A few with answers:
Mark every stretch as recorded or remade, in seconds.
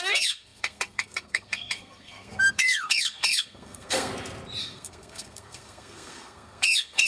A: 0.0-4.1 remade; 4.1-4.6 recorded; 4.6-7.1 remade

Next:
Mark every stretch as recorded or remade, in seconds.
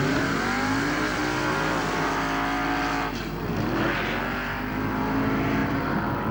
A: 0.0-5.6 recorded; 5.6-6.3 remade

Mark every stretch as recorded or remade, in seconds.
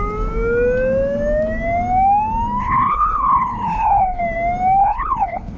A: 0.0-2.6 recorded; 2.6-4.2 remade; 4.2-4.8 recorded; 4.8-5.6 remade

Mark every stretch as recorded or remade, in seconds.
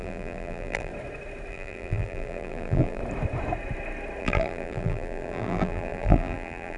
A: 0.0-0.9 remade; 0.9-1.5 recorded; 1.5-3.0 remade; 3.0-4.2 recorded; 4.2-6.8 remade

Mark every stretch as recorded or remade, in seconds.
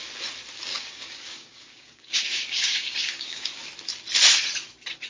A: 0.0-0.7 recorded; 0.7-3.6 remade; 3.6-5.1 recorded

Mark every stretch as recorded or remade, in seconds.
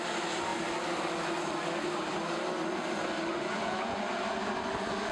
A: 0.0-3.3 recorded; 3.3-4.0 remade; 4.0-5.1 recorded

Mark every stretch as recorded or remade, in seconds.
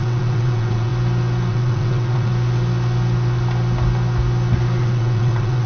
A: 0.0-0.9 remade; 0.9-1.5 recorded; 1.5-2.3 remade; 2.3-4.8 recorded; 4.8-5.7 remade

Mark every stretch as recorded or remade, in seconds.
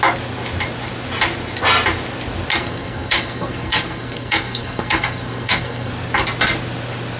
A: 0.0-2.5 recorded; 2.5-5.9 remade; 5.9-7.2 recorded